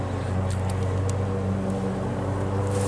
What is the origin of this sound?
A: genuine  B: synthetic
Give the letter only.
A